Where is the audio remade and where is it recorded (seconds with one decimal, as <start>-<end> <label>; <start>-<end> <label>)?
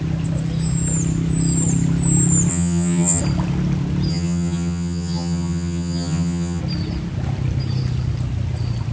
0.0-2.5 recorded; 2.5-3.2 remade; 3.2-4.1 recorded; 4.1-6.6 remade; 6.6-8.9 recorded